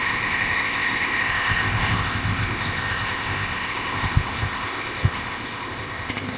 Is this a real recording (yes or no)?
no